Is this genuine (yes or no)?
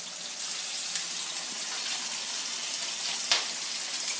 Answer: yes